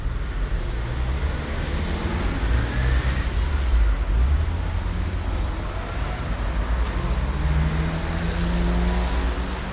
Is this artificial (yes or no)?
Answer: no